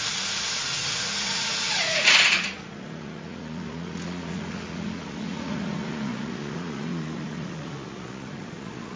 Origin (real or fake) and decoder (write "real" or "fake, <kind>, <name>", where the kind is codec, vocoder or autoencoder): fake, vocoder, Vocos